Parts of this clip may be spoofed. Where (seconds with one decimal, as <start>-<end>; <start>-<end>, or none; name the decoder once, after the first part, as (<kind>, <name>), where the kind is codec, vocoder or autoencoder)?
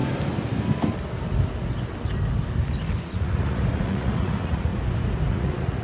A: 3.0-4.7 (vocoder, Vocos); 5.3-5.8